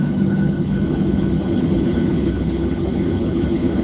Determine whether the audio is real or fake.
fake